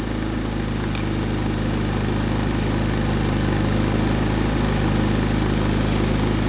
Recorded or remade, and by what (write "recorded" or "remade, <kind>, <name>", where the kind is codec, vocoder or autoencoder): recorded